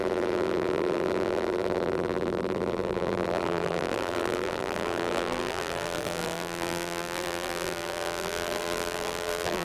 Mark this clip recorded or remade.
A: remade